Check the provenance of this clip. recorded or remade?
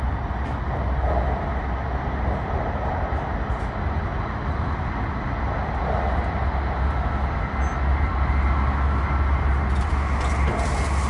recorded